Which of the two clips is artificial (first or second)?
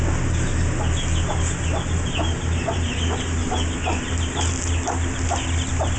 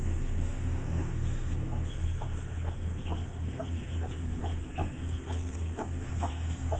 second